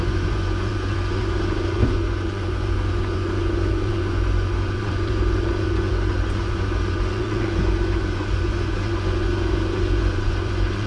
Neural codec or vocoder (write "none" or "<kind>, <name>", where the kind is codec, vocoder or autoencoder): vocoder, Vocos